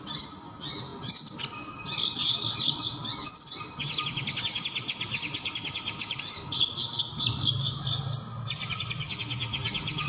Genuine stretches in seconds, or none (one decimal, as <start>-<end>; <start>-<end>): 0.0-10.1